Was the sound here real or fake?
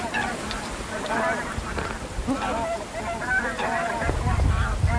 real